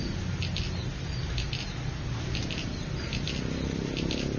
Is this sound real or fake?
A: real